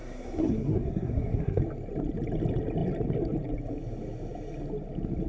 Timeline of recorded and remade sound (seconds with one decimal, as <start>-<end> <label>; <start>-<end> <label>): 0.0-1.6 remade; 1.6-5.3 recorded